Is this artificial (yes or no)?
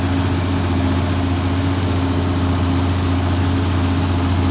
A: no